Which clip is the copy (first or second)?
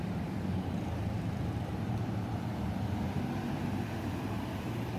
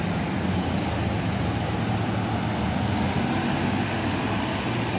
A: first